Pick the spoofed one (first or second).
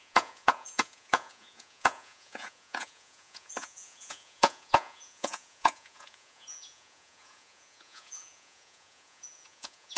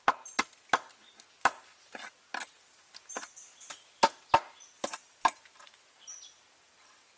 first